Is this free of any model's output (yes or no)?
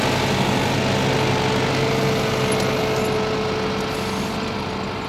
yes